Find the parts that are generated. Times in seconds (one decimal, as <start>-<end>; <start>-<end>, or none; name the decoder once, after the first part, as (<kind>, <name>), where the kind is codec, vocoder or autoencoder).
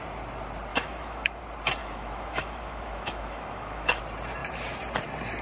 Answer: 0.7-1.4 (autoencoder, DAC-VAE); 1.8-4.0